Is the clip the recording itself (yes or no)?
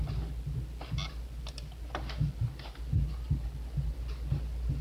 yes